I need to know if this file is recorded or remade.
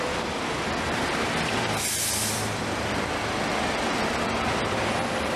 remade